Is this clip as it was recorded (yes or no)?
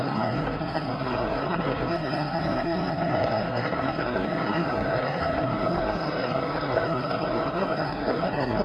no